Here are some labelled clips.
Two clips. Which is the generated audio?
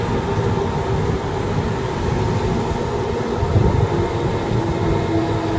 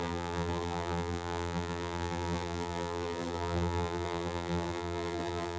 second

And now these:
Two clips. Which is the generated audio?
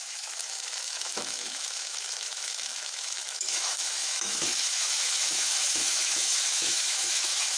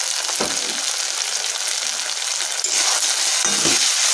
first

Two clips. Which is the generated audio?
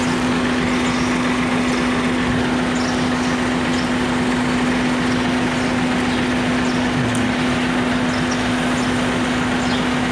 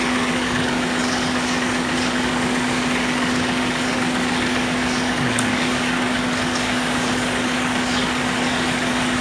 second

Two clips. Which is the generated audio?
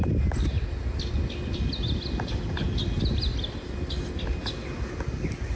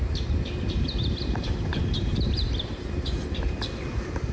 second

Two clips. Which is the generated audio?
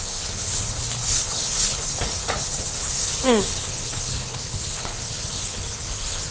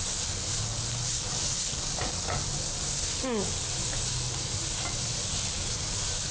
first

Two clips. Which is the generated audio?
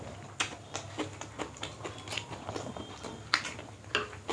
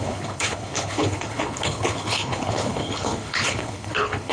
second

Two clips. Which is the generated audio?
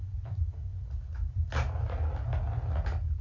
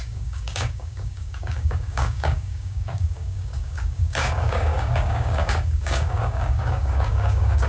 second